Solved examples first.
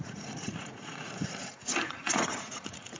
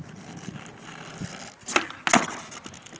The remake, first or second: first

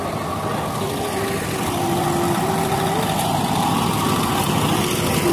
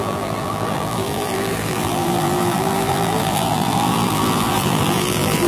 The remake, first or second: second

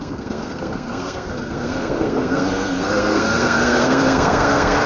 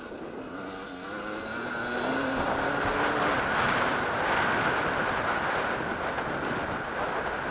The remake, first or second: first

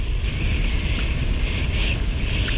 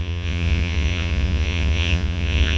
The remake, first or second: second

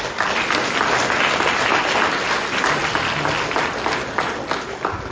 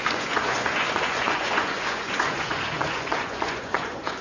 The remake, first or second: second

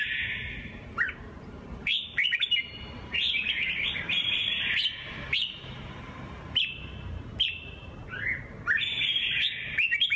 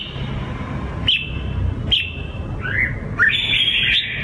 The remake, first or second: first